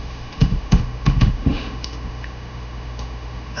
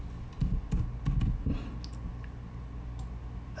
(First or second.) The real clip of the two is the second